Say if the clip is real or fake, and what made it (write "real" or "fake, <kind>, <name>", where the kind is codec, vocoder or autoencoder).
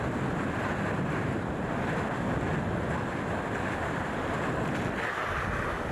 real